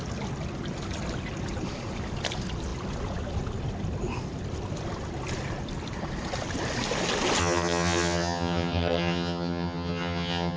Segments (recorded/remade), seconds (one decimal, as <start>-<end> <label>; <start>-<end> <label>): 0.0-7.4 recorded; 7.4-10.6 remade